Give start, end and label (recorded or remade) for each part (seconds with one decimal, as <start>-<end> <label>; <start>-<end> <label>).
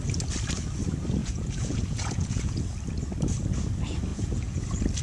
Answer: 0.0-1.2 recorded; 1.2-2.6 remade; 2.6-4.1 recorded; 4.1-4.6 remade; 4.6-5.0 recorded